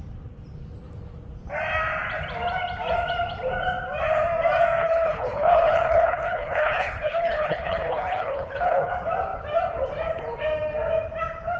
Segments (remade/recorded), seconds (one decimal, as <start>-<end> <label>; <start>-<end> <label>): 0.0-4.8 recorded; 4.8-8.9 remade; 8.9-11.6 recorded